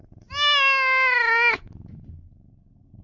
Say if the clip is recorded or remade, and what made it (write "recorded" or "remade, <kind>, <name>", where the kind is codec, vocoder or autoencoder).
recorded